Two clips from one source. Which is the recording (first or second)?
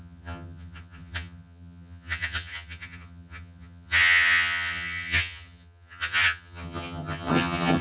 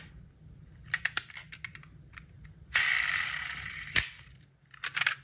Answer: second